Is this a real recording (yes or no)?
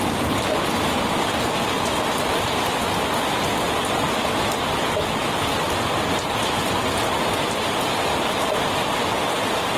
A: yes